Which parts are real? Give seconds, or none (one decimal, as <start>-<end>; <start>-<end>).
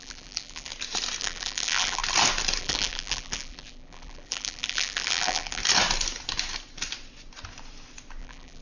0.7-1.2; 2.0-2.6; 5.6-8.2